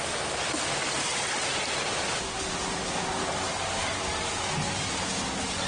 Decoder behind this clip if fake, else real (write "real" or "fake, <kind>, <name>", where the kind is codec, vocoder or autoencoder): real